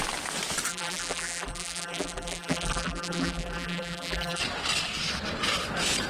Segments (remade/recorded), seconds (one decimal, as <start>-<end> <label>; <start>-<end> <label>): 0.0-0.7 recorded; 0.7-4.4 remade; 4.4-6.1 recorded